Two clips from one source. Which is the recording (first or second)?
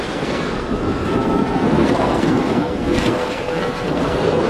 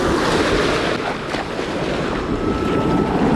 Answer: second